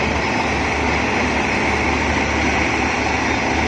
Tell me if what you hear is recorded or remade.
recorded